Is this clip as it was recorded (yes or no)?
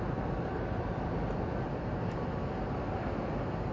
yes